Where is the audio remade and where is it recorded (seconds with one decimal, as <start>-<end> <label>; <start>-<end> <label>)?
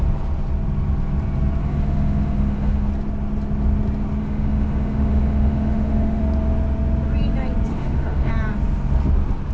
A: 0.0-1.6 recorded; 1.6-2.9 remade; 2.9-4.2 recorded; 4.2-6.2 remade; 6.2-7.7 recorded; 7.7-8.3 remade; 8.3-9.5 recorded